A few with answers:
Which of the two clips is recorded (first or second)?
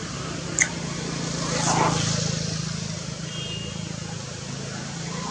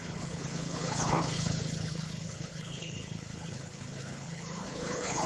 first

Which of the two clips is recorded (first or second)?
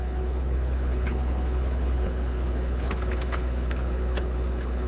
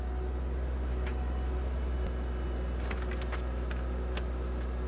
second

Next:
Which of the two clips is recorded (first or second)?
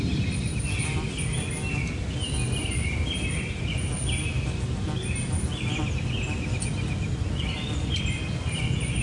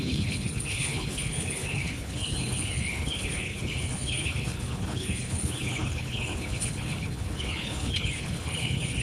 first